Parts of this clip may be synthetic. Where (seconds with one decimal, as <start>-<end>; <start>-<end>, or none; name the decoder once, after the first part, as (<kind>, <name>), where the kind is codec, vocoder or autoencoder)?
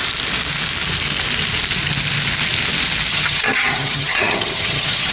3.1-5.1 (vocoder, HiFi-GAN)